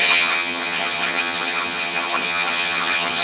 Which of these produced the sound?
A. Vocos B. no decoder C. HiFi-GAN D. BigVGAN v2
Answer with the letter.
C